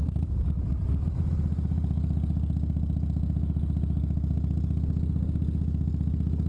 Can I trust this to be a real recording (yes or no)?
yes